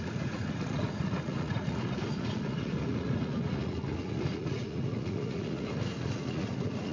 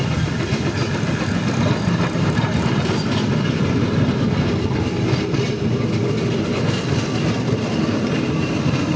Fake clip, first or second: first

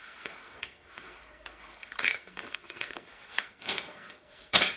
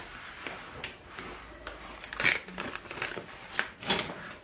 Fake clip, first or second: first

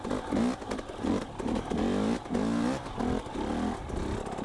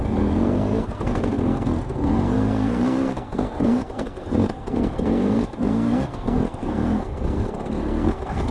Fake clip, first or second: second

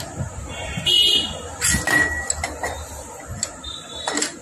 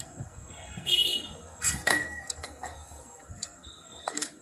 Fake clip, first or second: second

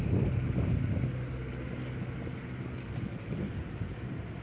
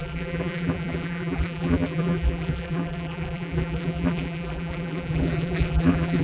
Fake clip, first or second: second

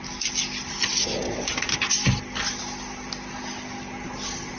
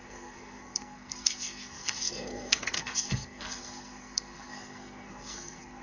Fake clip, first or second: second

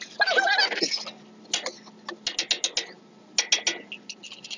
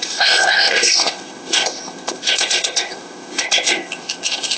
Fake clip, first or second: second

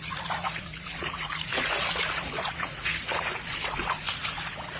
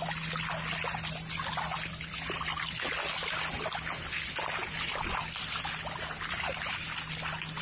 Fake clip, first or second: first